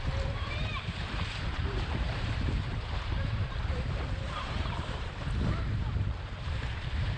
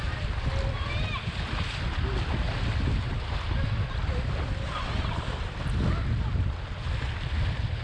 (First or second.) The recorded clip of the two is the second